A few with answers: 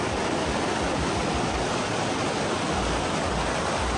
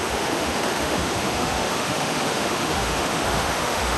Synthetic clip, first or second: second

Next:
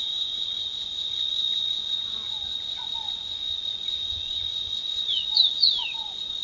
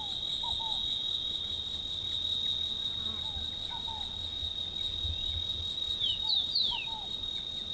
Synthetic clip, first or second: first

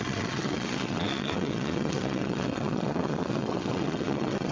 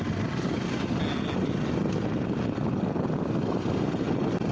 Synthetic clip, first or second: first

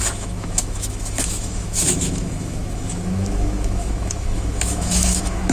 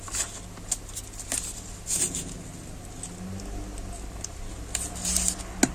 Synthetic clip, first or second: first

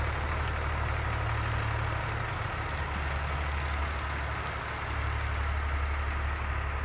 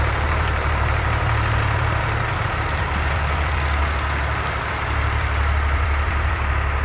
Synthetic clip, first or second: second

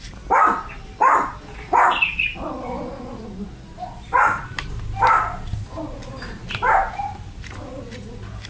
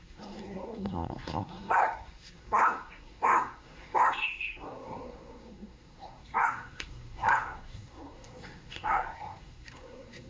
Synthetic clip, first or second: second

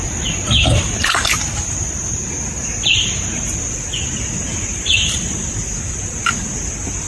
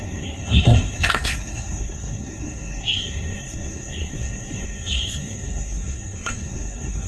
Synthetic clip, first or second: second